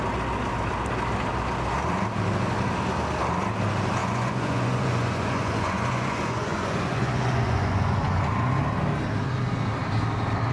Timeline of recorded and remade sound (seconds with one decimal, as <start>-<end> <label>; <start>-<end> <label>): 0.0-4.0 recorded; 4.0-8.2 remade; 8.2-10.5 recorded

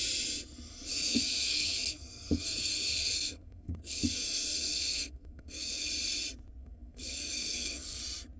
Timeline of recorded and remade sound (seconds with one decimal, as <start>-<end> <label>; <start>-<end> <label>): 0.0-0.9 recorded; 0.9-5.9 remade; 5.9-6.6 recorded; 6.6-8.0 remade; 8.0-8.4 recorded